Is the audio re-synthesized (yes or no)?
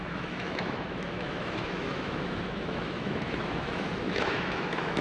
yes